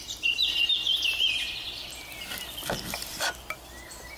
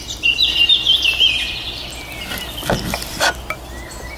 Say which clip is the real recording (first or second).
second